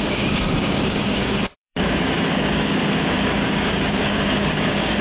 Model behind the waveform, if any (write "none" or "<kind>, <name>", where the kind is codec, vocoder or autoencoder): codec, DAC